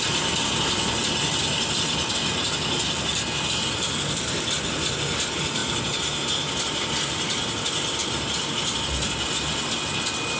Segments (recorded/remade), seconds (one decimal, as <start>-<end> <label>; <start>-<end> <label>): 0.0-10.4 recorded